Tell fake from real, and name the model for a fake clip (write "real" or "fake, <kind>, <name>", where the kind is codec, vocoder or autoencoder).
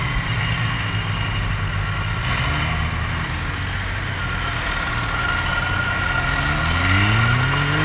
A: real